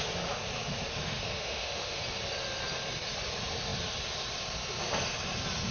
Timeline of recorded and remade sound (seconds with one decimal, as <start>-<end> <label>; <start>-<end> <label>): 0.0-0.9 recorded; 0.9-2.0 remade; 2.0-5.7 recorded